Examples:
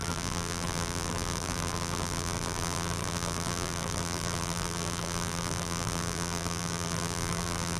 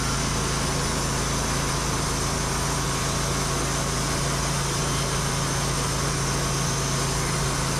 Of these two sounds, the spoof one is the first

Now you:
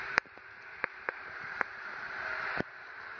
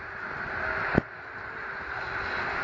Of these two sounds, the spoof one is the first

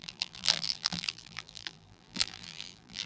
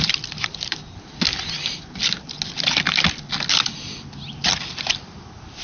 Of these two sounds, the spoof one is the first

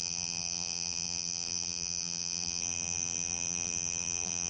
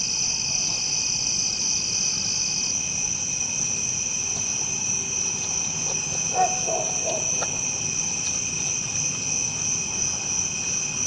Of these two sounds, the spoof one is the first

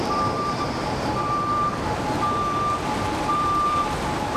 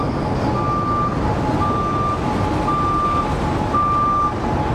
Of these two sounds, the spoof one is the first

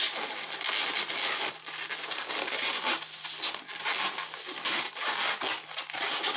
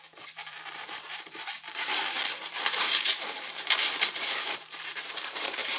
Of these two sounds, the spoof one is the second